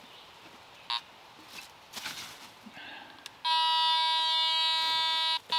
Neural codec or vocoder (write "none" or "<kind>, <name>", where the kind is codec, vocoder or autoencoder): none